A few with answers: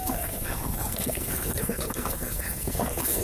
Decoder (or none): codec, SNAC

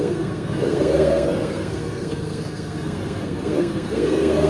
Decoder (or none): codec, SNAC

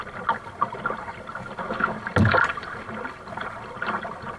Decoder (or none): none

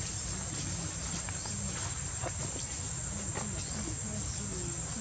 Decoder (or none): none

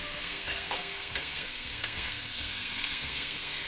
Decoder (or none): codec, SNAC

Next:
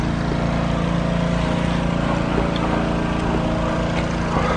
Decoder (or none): none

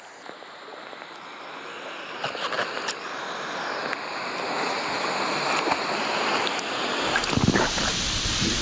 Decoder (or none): none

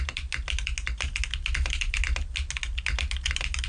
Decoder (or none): none